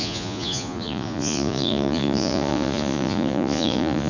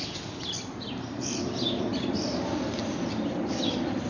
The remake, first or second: first